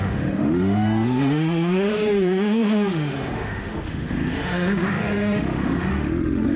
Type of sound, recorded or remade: remade